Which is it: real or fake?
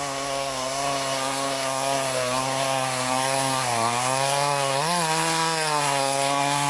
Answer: fake